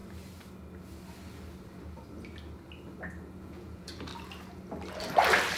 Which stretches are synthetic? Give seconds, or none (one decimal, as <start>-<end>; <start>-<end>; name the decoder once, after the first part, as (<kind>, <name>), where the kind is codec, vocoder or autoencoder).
3.4-4.1 (vocoder, Vocos)